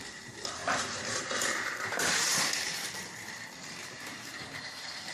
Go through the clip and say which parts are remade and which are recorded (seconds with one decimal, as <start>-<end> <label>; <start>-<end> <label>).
0.0-3.2 remade; 3.2-3.8 recorded; 3.8-5.1 remade